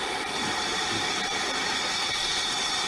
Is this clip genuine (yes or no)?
yes